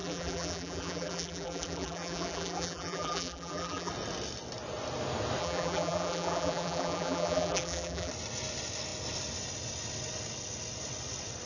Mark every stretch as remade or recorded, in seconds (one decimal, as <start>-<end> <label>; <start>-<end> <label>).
0.0-3.9 remade; 3.9-5.4 recorded; 5.4-8.1 remade; 8.1-11.5 recorded